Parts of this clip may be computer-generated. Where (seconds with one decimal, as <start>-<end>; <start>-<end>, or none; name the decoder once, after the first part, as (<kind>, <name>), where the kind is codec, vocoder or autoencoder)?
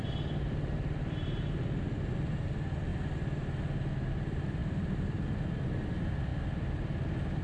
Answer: none